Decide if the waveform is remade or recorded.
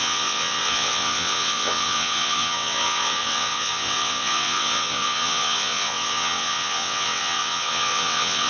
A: remade